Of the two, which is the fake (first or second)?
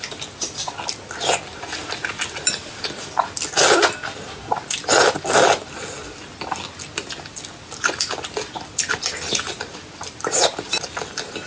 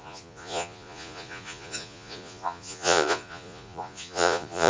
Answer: second